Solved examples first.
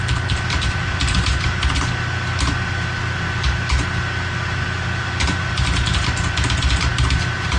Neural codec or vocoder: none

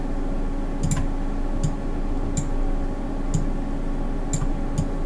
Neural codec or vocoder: none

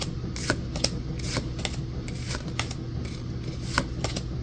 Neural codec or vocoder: none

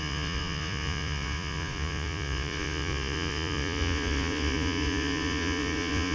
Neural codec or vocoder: vocoder, Vocos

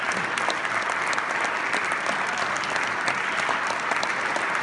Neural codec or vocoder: none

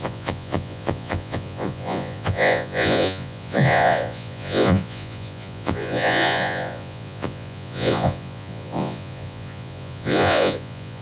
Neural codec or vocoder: vocoder, Vocos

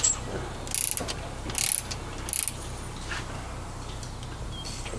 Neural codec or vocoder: none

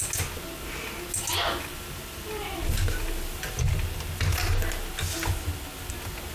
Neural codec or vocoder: none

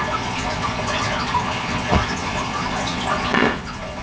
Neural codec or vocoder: vocoder, Vocos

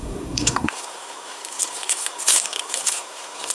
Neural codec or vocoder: codec, SNAC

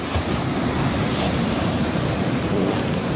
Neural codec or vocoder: vocoder, BigVGAN v2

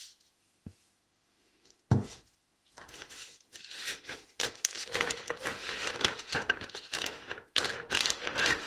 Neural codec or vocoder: autoencoder, DAC-VAE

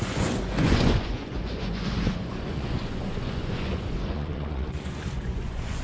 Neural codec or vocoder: vocoder, Vocos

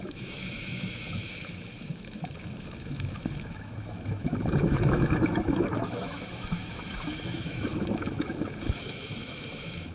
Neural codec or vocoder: autoencoder, DAC-VAE